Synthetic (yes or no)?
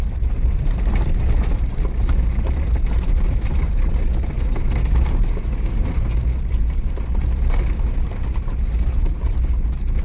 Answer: no